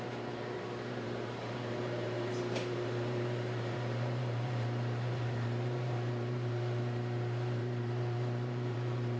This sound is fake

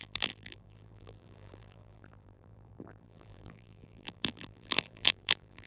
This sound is fake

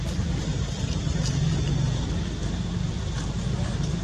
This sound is real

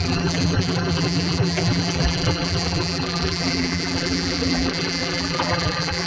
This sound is fake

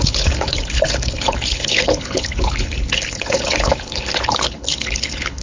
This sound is fake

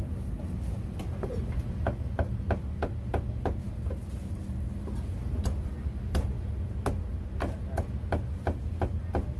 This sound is real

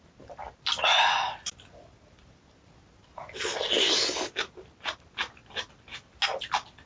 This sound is real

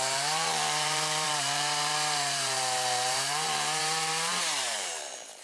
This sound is fake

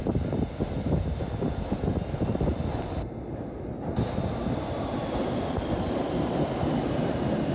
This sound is real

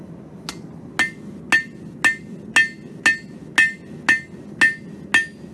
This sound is real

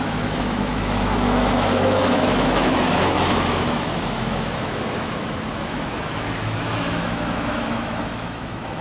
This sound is fake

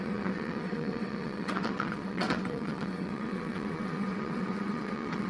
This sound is fake